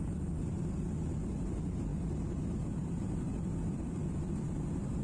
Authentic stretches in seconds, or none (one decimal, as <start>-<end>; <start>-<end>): 1.9-2.5